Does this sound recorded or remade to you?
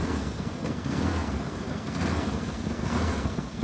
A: remade